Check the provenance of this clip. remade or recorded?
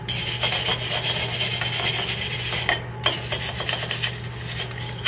recorded